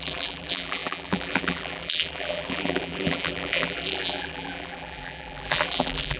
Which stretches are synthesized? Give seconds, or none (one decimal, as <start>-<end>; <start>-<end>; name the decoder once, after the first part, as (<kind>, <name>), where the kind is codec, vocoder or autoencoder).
0.0-6.2 (vocoder, BigVGAN v2)